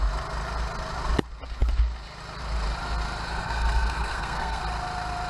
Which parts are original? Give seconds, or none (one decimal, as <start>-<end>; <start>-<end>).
0.0-3.4; 4.6-5.3